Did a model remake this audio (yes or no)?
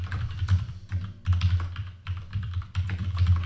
yes